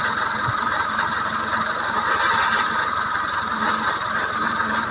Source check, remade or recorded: remade